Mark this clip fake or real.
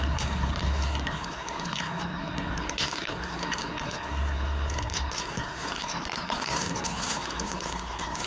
fake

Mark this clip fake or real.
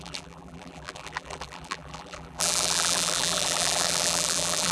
fake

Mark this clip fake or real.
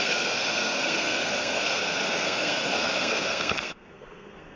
fake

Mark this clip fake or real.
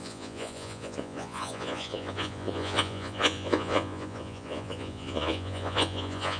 fake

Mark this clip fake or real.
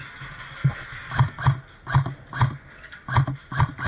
real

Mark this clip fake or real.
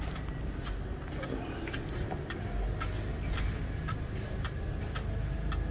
real